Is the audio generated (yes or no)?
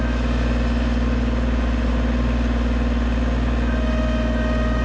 no